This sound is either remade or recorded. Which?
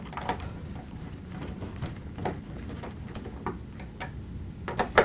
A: recorded